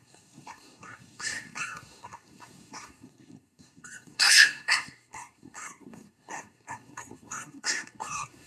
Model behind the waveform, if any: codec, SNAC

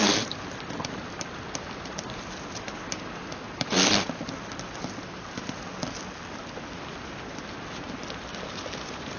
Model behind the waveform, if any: none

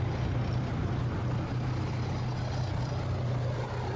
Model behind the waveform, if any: none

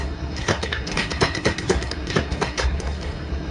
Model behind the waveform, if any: codec, SNAC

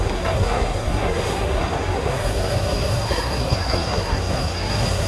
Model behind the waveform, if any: codec, SNAC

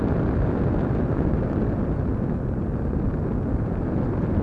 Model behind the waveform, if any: none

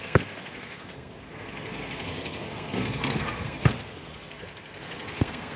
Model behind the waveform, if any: codec, SNAC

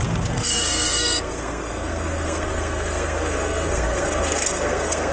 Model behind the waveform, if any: codec, SNAC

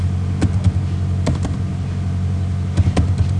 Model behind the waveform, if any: none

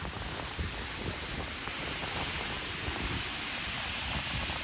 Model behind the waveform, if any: none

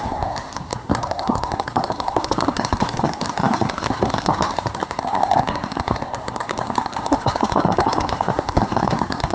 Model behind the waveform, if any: codec, SNAC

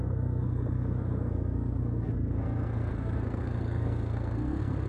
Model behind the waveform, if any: codec, SNAC